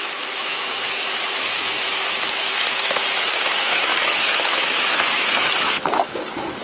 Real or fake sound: fake